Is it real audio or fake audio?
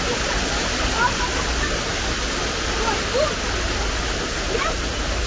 real